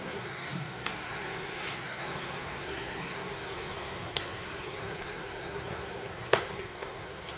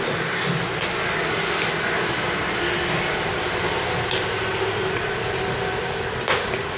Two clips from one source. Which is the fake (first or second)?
first